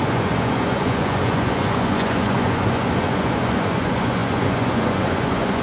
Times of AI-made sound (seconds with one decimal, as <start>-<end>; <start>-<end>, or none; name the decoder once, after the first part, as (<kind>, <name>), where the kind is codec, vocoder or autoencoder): 0.0-5.6 (vocoder, Vocos)